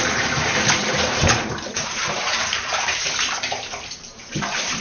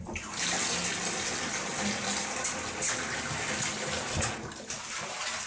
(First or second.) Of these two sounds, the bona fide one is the second